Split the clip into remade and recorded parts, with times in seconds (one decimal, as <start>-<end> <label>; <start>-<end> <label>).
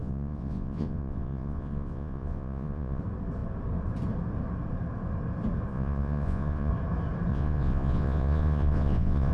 0.0-3.0 remade; 3.0-5.7 recorded; 5.7-6.7 remade; 6.7-7.3 recorded; 7.3-9.3 remade